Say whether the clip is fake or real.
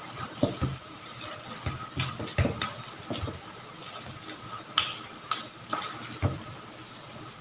fake